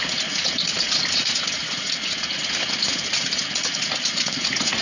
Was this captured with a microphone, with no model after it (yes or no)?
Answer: no